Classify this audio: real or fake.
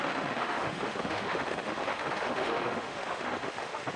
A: fake